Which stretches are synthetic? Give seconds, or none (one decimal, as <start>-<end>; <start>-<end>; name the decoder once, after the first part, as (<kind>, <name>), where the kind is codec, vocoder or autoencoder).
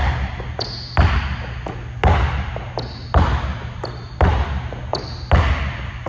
none